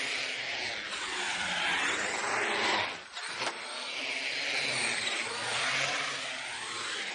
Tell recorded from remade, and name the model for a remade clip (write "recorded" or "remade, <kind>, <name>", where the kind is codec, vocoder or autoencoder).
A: recorded